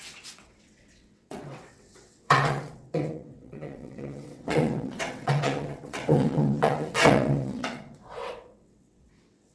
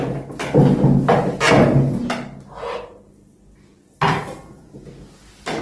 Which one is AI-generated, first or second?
first